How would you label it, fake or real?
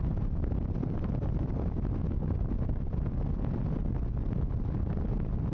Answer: real